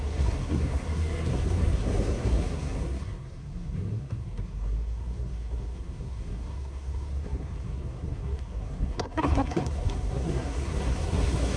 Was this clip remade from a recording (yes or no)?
yes